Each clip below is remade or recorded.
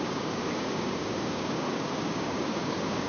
remade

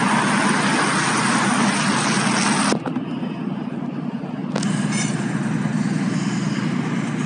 recorded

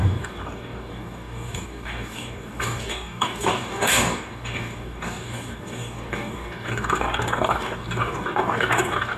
remade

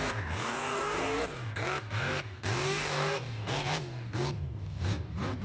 remade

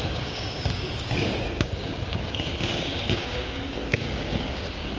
remade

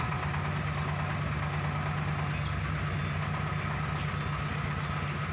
recorded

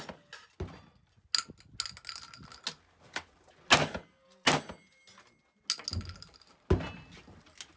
recorded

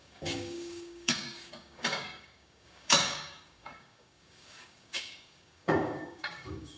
remade